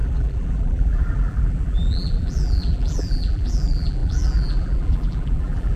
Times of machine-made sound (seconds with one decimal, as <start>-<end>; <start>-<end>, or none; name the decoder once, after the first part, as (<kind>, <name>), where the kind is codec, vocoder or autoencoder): 0.0-5.8 (vocoder, BigVGAN v2)